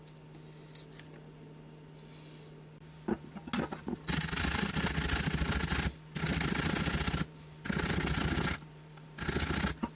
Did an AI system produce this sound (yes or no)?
no